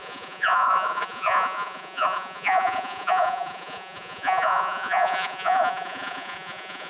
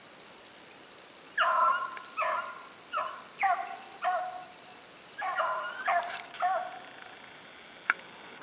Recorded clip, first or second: second